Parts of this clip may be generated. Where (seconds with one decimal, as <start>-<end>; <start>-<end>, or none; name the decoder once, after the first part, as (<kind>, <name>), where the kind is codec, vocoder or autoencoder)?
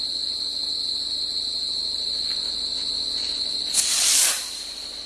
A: 0.0-5.1 (vocoder, BigVGAN v2)